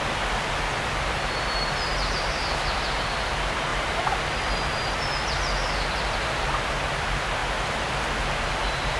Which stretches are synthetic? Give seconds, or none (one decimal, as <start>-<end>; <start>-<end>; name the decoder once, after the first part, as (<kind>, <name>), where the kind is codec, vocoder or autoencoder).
3.7-4.5 (vocoder, BigVGAN v2)